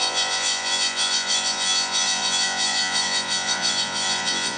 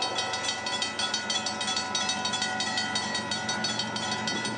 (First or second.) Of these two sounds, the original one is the second